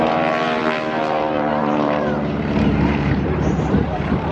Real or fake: fake